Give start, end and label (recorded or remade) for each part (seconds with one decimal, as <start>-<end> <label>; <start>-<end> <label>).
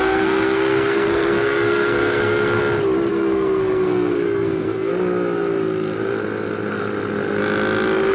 0.0-2.6 remade; 2.6-3.1 recorded; 3.1-4.9 remade; 4.9-8.1 recorded